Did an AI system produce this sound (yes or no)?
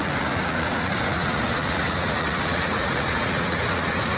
yes